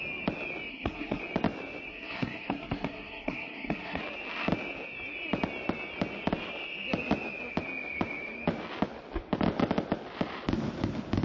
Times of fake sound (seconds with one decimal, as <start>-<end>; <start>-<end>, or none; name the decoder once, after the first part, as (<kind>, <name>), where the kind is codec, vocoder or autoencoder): 0.7-1.2 (codec, SNAC); 1.9-4.0